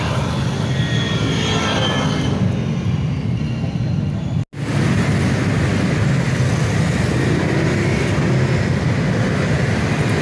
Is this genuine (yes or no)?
yes